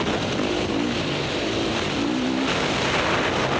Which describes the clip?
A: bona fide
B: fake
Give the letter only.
A